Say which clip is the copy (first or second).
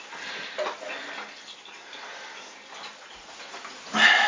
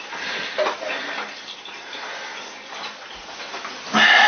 second